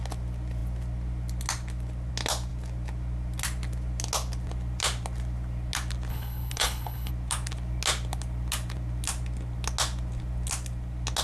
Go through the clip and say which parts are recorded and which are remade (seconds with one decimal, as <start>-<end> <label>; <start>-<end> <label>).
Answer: 0.0-6.1 recorded; 6.1-7.1 remade; 7.1-11.2 recorded